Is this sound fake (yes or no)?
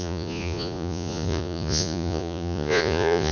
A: yes